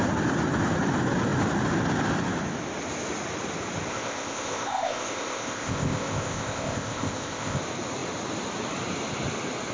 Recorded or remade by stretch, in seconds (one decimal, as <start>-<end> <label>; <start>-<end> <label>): 0.0-3.9 recorded; 3.9-7.6 remade; 7.6-9.7 recorded